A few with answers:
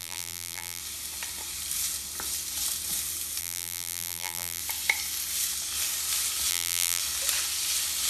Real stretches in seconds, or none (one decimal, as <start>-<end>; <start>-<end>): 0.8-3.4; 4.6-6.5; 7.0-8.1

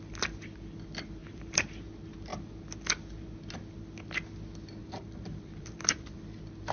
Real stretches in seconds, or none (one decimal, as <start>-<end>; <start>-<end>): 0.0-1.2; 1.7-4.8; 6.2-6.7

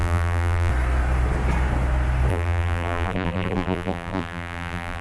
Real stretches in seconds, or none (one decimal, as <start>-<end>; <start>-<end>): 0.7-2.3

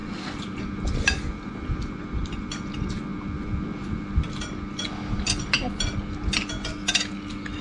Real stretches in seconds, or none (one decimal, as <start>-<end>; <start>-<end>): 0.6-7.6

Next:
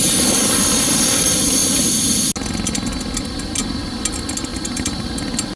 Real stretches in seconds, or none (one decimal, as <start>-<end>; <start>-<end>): 0.0-4.5; 5.1-5.6